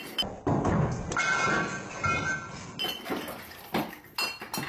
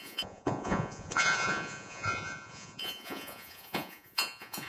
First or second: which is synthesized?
second